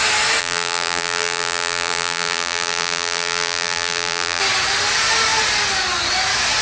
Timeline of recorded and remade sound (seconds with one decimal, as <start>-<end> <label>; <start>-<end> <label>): 0.0-0.4 recorded; 0.4-4.4 remade; 4.4-6.6 recorded